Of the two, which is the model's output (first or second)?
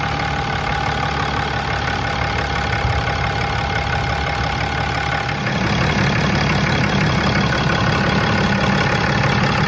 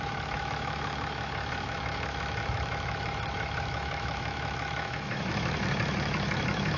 second